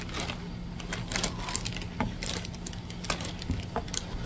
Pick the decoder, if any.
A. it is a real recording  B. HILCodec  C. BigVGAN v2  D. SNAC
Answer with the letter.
A